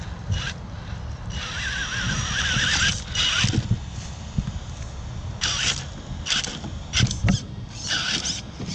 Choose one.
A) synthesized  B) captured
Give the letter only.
B